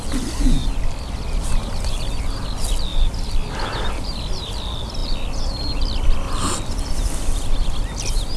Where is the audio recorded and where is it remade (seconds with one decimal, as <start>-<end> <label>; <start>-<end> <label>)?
0.0-2.9 recorded; 2.9-3.9 remade; 3.9-8.4 recorded